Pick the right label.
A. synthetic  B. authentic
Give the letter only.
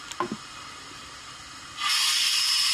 B